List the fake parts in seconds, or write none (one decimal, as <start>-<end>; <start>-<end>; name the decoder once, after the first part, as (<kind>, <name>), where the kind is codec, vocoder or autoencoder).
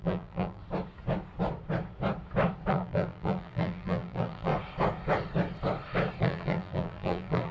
0.0-0.6 (vocoder, BigVGAN v2); 2.7-4.5; 6.2-7.5